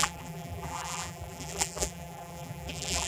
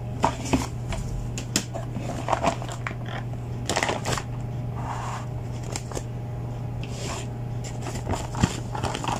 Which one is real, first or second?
second